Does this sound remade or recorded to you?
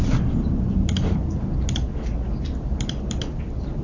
recorded